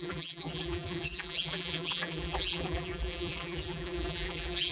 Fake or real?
fake